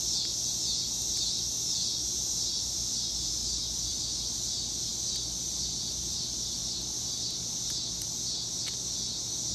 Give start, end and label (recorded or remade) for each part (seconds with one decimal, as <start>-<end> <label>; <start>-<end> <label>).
0.0-9.5 recorded